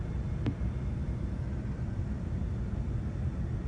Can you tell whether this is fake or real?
real